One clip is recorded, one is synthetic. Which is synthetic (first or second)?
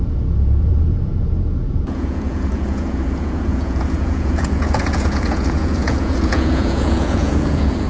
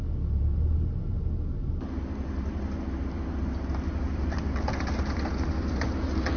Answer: first